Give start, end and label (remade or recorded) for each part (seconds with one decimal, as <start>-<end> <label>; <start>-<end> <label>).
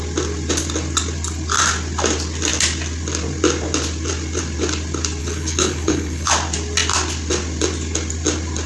0.0-5.2 recorded; 5.2-6.3 remade; 6.3-8.7 recorded